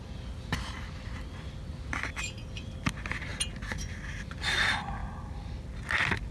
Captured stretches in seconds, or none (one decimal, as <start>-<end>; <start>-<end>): 0.0-6.3